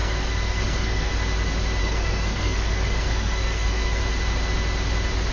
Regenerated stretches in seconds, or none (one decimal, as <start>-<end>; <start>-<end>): 0.0-1.1; 1.8-4.0